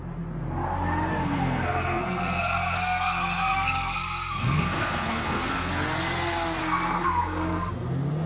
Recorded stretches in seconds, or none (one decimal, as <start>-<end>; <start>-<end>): 0.0-1.2; 5.7-6.6; 7.7-8.3